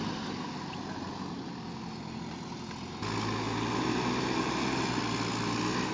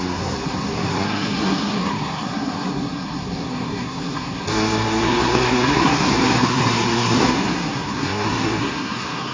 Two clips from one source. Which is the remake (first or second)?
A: second